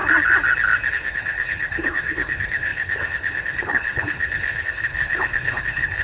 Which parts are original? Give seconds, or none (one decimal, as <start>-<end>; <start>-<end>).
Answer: 0.0-0.9